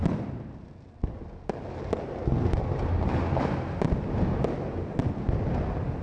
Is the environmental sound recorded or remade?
recorded